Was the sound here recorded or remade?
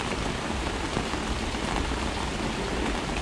recorded